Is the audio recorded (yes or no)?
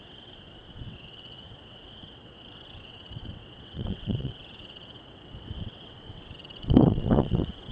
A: no